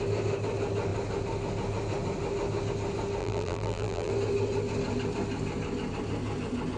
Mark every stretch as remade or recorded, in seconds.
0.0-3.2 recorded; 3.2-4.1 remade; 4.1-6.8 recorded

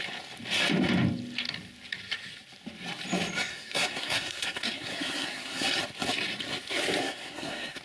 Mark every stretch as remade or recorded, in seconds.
0.0-3.5 recorded; 3.5-5.8 remade; 5.8-7.0 recorded; 7.0-7.8 remade

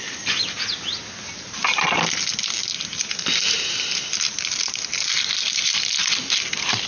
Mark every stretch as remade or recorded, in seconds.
0.0-6.9 recorded